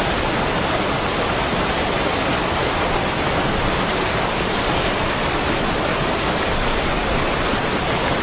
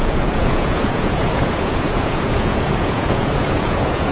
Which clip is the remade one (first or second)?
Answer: second